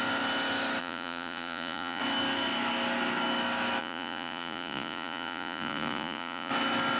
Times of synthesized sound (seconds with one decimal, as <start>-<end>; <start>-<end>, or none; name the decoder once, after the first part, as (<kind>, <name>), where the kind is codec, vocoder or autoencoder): 0.8-2.0 (vocoder, Vocos); 3.8-6.5